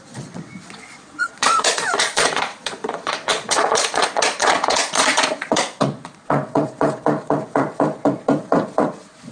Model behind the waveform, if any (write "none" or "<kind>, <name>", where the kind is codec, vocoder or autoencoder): vocoder, Vocos